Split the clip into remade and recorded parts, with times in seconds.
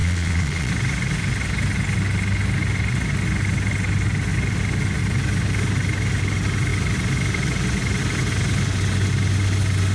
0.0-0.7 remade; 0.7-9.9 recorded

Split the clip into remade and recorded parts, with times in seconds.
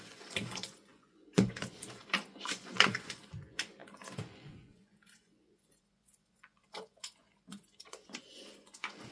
0.0-9.1 remade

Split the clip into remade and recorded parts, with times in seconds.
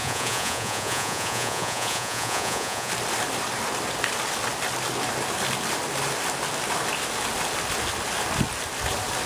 0.0-2.9 remade; 2.9-9.3 recorded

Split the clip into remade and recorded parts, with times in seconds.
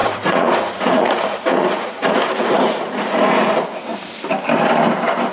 0.0-3.9 remade; 3.9-5.3 recorded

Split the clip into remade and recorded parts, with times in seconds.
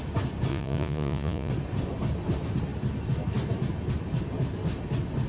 0.0-0.5 recorded; 0.5-1.5 remade; 1.5-5.3 recorded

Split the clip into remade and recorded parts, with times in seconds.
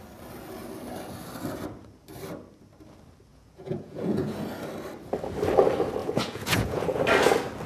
0.0-3.3 recorded; 3.3-4.4 remade; 4.4-6.0 recorded; 6.0-7.0 remade; 7.0-7.7 recorded